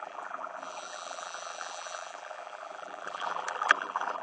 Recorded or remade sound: remade